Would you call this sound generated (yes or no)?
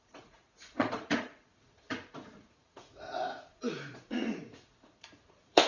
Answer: yes